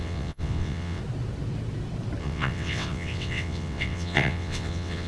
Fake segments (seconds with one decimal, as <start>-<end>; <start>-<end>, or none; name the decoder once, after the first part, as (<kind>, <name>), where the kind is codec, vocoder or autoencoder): 0.0-1.0 (vocoder, WaveNeXt); 2.2-5.1

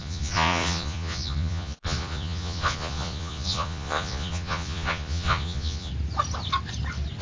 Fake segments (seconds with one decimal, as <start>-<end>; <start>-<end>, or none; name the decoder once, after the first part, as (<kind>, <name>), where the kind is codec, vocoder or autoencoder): 0.0-5.9 (vocoder, Vocos)

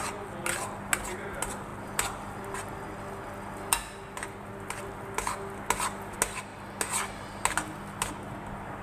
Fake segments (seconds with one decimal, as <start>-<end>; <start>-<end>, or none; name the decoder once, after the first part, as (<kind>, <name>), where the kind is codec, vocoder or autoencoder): none

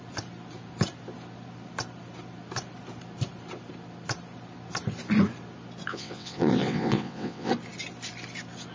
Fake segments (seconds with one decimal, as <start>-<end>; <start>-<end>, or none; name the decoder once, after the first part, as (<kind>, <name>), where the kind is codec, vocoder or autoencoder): 5.9-7.5 (vocoder, WaveNeXt)

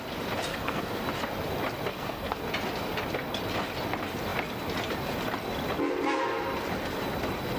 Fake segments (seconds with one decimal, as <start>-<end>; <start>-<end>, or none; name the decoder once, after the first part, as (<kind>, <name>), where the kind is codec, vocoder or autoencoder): 0.5-1.0 (codec, SNAC); 1.9-2.4

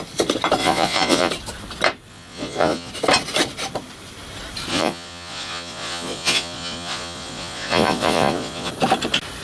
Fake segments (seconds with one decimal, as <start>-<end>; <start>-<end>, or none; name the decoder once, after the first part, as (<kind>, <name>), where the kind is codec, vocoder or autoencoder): 0.6-1.3 (vocoder, Vocos); 2.1-2.9; 4.7-8.7

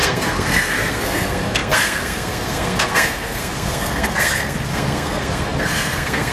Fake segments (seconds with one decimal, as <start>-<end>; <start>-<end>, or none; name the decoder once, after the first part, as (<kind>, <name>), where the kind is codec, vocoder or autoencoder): 0.0-6.3 (codec, SNAC)